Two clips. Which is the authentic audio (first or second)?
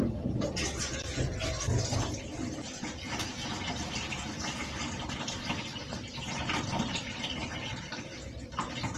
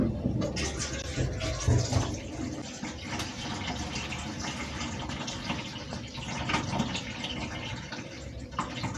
second